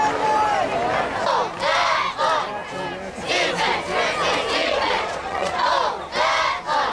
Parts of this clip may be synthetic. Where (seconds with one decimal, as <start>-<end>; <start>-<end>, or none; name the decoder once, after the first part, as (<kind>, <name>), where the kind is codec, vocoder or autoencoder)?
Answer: 4.6-5.7 (vocoder, Vocos)